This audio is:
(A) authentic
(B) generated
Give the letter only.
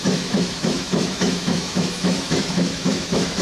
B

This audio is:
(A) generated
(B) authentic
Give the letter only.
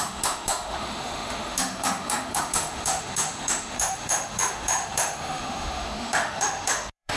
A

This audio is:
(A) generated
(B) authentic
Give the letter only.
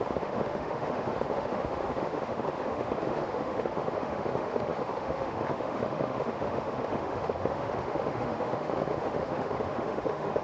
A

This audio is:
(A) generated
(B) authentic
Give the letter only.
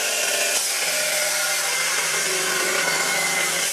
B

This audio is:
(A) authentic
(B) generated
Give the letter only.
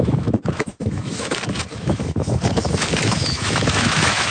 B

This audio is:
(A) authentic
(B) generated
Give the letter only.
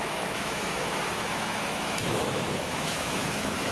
B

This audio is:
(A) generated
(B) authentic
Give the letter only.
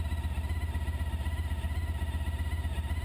B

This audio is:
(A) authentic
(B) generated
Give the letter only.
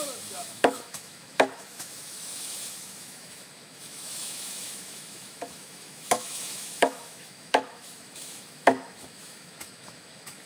B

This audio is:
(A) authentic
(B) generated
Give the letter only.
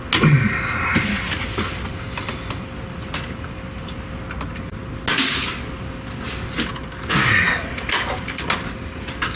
A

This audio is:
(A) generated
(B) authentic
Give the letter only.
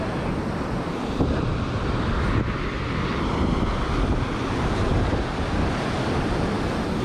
B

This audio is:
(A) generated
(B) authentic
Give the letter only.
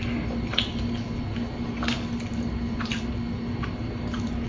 B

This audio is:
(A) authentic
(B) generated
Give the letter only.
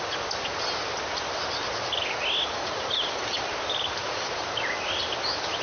A